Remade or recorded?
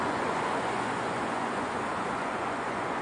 remade